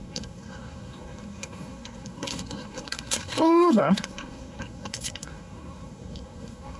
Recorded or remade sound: remade